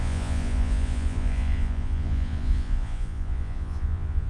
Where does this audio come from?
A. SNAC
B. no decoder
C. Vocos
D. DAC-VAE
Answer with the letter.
C